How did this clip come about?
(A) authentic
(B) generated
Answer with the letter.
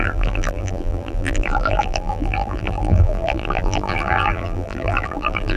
B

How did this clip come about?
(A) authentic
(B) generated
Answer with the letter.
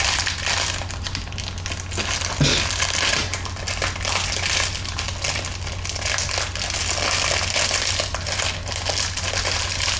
A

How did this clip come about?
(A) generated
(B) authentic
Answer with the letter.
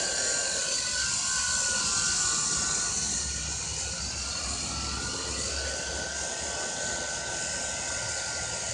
B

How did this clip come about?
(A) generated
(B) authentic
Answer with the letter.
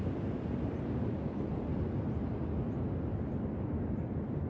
B